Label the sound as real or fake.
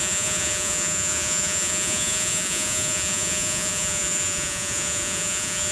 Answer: fake